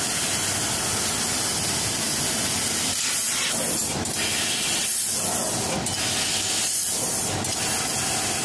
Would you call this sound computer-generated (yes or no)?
no